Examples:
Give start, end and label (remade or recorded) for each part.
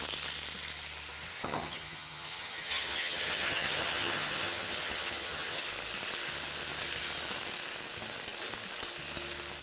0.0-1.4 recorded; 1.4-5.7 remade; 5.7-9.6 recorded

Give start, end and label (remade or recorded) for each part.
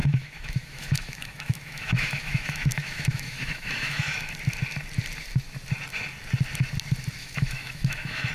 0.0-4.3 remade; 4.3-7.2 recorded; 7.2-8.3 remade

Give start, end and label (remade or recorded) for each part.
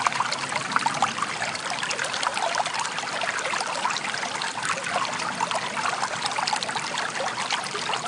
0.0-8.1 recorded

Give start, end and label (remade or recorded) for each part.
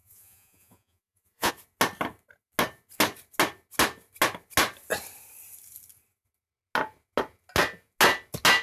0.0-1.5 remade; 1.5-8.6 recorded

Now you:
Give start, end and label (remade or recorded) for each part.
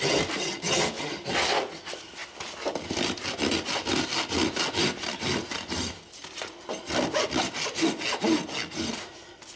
0.0-9.6 recorded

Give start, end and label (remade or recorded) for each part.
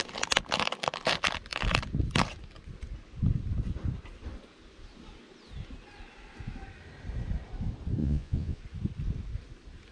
0.0-8.0 recorded; 8.0-8.6 remade; 8.6-9.9 recorded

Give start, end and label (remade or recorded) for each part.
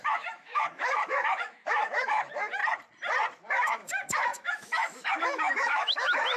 0.0-2.6 remade; 2.6-3.5 recorded; 3.5-6.4 remade